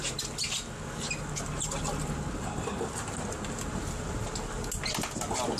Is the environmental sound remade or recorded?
recorded